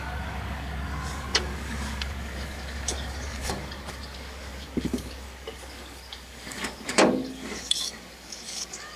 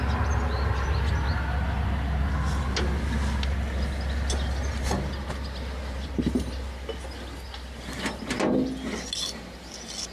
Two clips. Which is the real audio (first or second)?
second